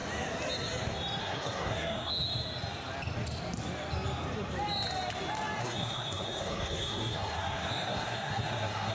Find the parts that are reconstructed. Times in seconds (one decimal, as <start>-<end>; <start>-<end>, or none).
1.2-2.1; 5.6-8.9